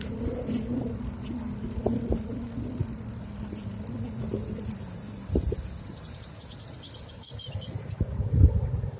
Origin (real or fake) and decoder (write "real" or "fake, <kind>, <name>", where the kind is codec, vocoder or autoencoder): real